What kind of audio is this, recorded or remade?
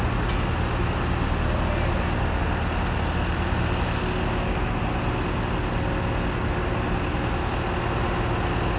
recorded